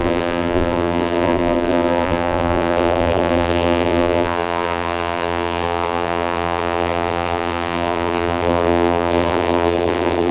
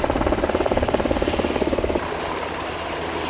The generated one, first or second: first